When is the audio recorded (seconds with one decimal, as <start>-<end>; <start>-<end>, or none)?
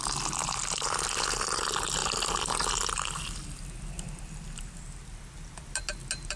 0.0-6.4